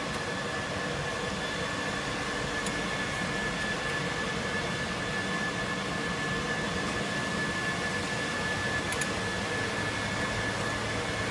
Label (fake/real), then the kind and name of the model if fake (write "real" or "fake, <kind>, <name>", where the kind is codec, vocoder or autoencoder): real